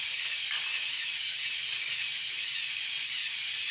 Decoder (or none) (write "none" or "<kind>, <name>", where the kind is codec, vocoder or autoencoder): none